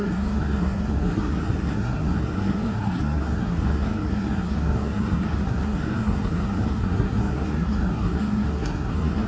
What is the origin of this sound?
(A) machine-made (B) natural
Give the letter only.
A